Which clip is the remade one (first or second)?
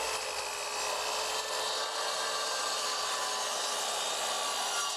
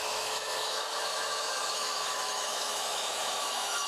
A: second